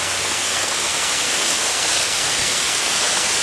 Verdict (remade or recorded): remade